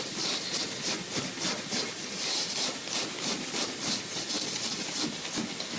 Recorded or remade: recorded